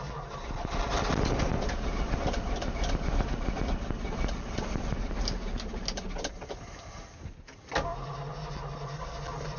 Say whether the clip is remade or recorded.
recorded